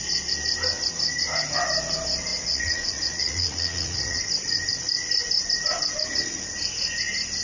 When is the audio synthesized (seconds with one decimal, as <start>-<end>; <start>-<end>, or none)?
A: 2.3-4.2